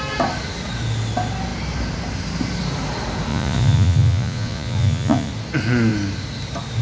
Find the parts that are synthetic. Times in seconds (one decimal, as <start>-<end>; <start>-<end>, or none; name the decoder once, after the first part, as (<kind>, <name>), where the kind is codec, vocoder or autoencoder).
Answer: 3.3-5.3 (vocoder, Vocos)